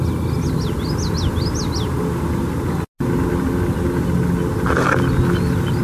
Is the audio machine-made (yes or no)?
no